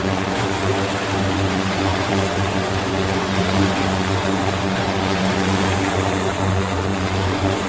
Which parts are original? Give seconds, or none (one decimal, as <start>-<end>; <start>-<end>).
0.7-1.3